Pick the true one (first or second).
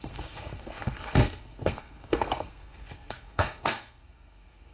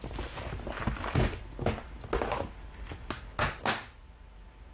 second